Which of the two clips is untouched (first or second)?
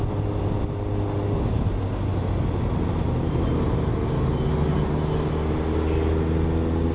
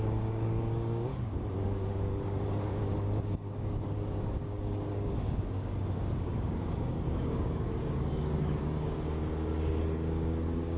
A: first